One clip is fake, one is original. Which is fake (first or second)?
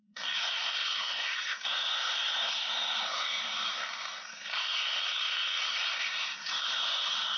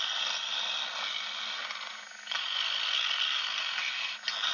first